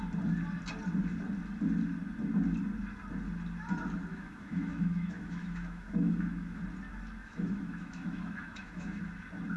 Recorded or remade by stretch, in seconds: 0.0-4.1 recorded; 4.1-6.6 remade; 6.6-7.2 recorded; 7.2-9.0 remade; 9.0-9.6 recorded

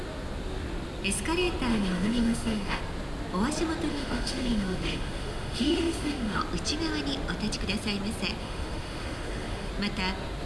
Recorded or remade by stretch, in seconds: 0.0-1.7 recorded; 1.7-2.8 remade; 2.8-3.9 recorded; 3.9-6.4 remade; 6.4-8.4 recorded; 8.4-9.7 remade; 9.7-10.5 recorded